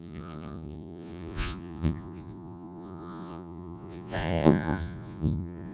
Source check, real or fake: fake